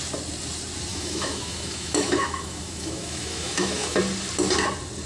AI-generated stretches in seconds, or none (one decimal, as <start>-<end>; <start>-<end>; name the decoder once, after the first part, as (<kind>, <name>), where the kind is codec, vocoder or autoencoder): 0.9-4.0 (autoencoder, DAC-VAE)